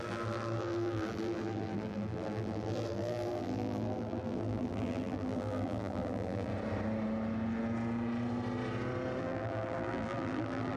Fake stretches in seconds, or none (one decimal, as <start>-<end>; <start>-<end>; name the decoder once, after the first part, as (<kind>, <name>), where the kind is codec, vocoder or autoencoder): 0.0-6.5 (vocoder, BigVGAN v2); 9.2-10.8